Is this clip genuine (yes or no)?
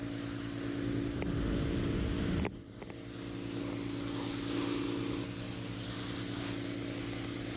yes